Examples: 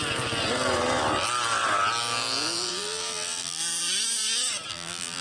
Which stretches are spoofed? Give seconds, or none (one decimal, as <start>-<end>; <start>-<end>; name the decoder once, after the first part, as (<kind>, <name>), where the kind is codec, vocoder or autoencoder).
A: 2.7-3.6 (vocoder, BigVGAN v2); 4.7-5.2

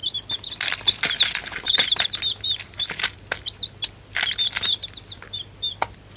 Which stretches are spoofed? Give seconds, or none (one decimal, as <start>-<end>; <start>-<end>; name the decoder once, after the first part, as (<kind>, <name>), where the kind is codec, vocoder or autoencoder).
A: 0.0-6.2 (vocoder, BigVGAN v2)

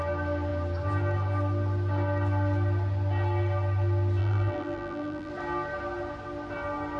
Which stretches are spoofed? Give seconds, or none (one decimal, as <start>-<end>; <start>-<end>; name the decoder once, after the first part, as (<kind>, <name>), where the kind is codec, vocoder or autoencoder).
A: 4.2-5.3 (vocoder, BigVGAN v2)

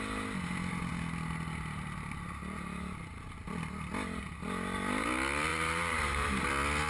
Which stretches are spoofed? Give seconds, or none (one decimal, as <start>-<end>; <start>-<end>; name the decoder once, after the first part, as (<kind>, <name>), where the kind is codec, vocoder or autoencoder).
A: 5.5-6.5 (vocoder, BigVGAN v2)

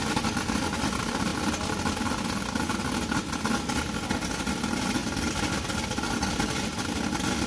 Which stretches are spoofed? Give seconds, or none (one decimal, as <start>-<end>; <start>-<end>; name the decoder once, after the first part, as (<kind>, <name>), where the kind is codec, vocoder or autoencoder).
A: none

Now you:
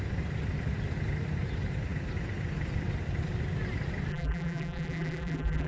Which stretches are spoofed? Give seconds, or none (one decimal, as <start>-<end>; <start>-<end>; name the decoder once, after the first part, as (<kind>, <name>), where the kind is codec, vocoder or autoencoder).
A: 4.1-5.7 (vocoder, BigVGAN v2)